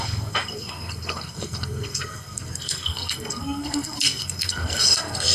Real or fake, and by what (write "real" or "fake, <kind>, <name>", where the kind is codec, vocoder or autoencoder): fake, codec, SNAC